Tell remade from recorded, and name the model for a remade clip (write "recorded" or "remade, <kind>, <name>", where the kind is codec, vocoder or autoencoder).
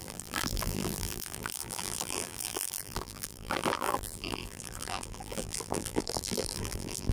remade, vocoder, BigVGAN v2